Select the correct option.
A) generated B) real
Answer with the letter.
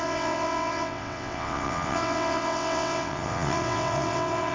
A